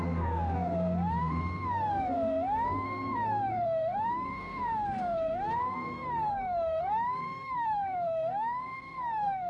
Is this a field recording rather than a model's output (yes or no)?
no